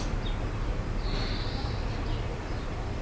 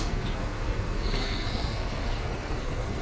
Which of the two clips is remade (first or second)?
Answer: second